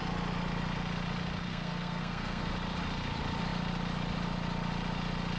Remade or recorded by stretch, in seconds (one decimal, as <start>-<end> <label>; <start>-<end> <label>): 0.0-1.5 recorded; 1.5-2.5 remade; 2.5-5.4 recorded